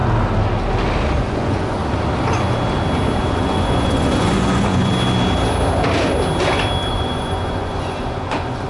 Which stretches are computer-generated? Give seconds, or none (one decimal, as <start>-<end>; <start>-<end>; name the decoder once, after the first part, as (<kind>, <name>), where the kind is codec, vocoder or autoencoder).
1.2-1.8 (vocoder, Vocos); 3.3-4.9; 6.9-8.7

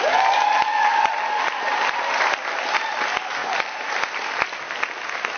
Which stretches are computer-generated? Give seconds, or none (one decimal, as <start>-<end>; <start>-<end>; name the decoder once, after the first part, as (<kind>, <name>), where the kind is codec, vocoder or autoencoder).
none